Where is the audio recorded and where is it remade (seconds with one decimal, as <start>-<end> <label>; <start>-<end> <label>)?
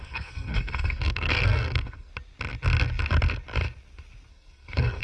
0.0-2.1 remade; 2.1-4.3 recorded; 4.3-5.0 remade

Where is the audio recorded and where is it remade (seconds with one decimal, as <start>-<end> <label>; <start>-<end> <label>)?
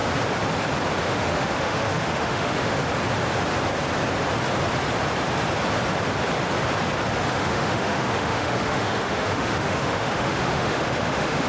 0.0-1.0 recorded; 1.0-2.8 remade; 2.8-7.3 recorded; 7.3-11.5 remade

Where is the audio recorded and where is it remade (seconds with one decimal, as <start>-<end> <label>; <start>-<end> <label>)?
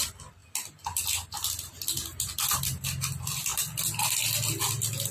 0.0-5.1 recorded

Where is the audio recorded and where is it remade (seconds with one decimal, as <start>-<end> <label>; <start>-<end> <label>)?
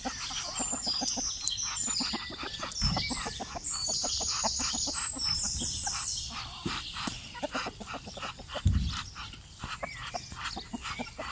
0.0-3.8 recorded; 3.8-8.6 remade; 8.6-11.3 recorded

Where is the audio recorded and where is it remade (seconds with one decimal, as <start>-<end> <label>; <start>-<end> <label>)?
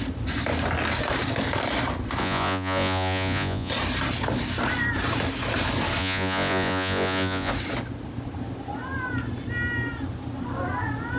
0.0-2.2 recorded; 2.2-3.7 remade; 3.7-6.0 recorded; 6.0-7.5 remade; 7.5-11.2 recorded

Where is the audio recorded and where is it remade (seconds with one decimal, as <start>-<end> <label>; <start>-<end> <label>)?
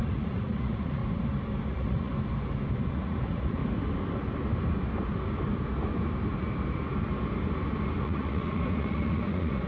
0.0-1.0 remade; 1.0-1.7 recorded; 1.7-2.1 remade; 2.1-2.9 recorded; 2.9-3.6 remade; 3.6-8.0 recorded; 8.0-9.7 remade